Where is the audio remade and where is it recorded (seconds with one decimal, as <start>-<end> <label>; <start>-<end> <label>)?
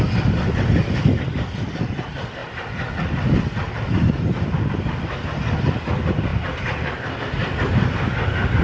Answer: 0.0-6.3 recorded; 6.3-7.2 remade; 7.2-8.6 recorded